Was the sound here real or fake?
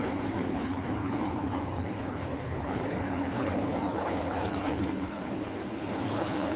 fake